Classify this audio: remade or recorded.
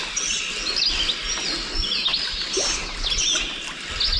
recorded